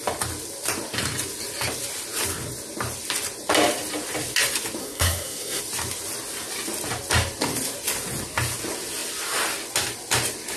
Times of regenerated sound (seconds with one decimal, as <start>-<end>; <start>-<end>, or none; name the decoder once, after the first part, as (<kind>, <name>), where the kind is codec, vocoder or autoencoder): 4.8-5.6 (codec, SNAC)